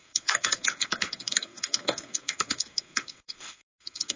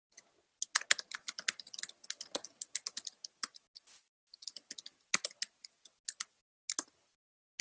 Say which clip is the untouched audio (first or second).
second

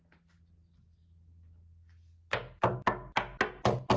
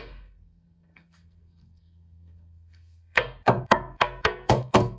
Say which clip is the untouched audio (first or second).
first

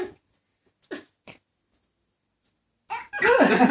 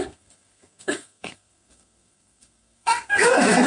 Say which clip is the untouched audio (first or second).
first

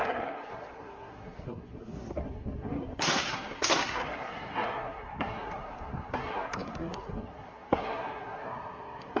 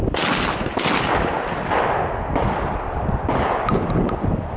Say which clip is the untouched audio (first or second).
second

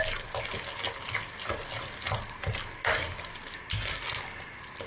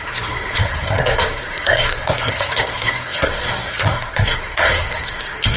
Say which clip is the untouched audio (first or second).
first